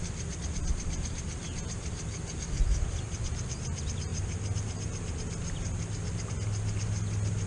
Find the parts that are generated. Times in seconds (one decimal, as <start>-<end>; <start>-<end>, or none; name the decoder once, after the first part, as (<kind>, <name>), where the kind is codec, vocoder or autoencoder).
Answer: none